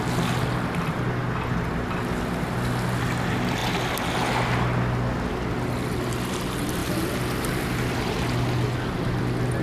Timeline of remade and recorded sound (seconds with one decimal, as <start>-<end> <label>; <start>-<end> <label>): 0.0-9.6 recorded